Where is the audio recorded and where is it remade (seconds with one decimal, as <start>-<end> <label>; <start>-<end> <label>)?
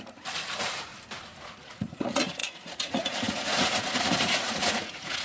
0.0-0.9 remade; 0.9-1.4 recorded; 1.4-5.2 remade